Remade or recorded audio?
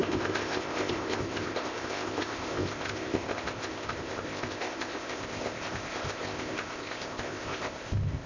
remade